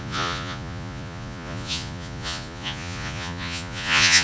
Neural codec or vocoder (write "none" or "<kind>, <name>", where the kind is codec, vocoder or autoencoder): vocoder, Vocos